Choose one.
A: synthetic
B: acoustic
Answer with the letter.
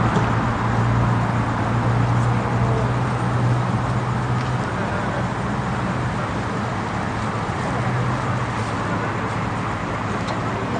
B